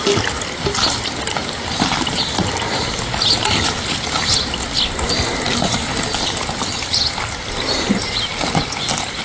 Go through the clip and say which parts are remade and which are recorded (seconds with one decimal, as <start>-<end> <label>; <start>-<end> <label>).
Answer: 0.0-9.2 recorded